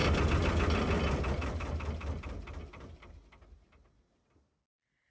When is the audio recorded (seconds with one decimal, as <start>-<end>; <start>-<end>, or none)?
0.0-5.1

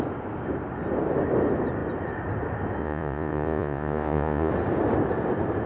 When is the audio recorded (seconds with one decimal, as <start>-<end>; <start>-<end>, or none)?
0.0-2.8; 4.5-5.7